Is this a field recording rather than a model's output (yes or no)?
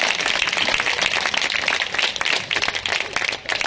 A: yes